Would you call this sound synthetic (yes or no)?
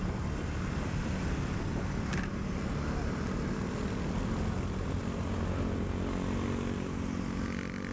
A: no